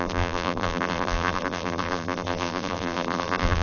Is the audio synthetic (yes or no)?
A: yes